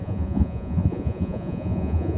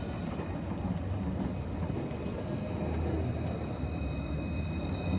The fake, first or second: first